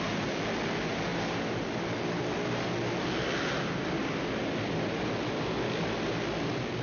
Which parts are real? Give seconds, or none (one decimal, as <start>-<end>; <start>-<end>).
0.0-6.8

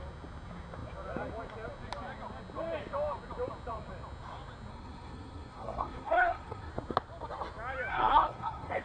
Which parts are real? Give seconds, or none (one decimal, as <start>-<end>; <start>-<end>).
0.0-4.7; 6.7-7.9

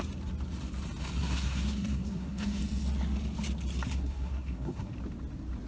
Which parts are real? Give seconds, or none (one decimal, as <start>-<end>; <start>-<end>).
0.0-1.2; 2.6-3.9; 4.9-5.7

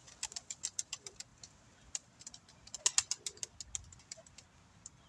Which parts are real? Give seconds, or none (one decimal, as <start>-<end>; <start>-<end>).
0.0-5.1

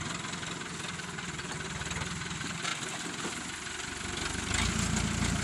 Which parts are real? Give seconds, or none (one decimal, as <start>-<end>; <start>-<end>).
0.0-5.4